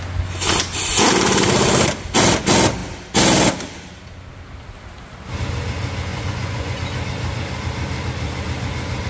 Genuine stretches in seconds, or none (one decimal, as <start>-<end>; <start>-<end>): 0.0-6.1; 6.8-9.1